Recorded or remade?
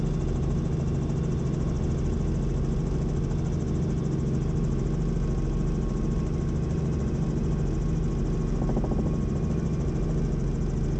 recorded